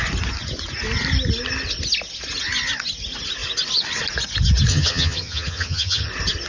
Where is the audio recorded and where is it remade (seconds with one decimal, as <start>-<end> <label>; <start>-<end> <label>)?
0.0-4.7 recorded; 4.7-6.1 remade; 6.1-6.5 recorded